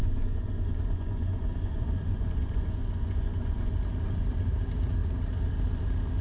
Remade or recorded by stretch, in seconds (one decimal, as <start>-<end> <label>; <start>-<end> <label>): 0.0-3.7 remade; 3.7-6.2 recorded